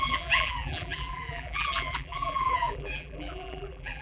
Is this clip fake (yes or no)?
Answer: yes